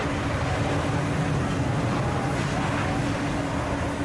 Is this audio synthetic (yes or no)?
no